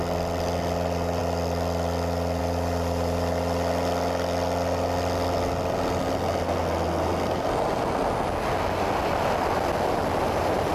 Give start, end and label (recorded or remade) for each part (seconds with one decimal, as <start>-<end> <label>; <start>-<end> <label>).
0.0-10.7 recorded